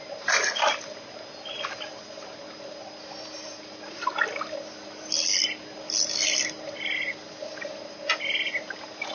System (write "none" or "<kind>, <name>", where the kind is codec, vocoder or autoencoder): none